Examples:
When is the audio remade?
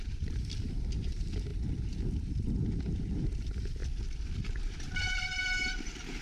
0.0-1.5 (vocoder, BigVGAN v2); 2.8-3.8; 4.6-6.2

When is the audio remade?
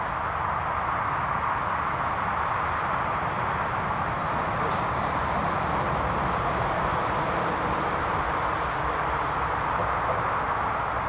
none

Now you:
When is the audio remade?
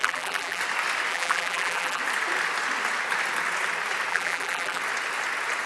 0.0-0.6 (vocoder, BigVGAN v2); 1.1-2.0; 4.1-4.8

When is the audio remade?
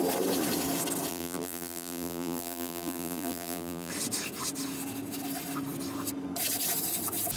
1.1-3.9 (vocoder, BigVGAN v2)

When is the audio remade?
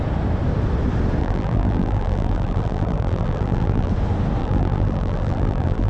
1.2-3.9 (vocoder, BigVGAN v2); 4.4-5.9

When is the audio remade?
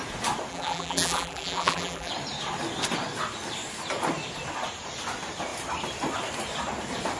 0.5-2.1 (vocoder, BigVGAN v2)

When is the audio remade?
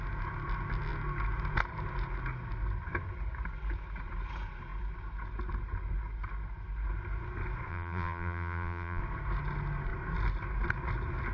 7.7-9.0 (vocoder, BigVGAN v2)